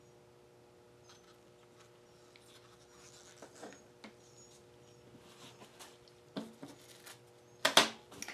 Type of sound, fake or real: real